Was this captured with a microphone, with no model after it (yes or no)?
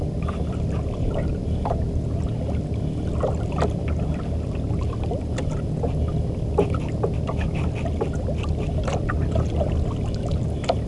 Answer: yes